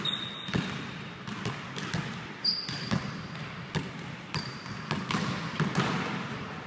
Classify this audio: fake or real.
real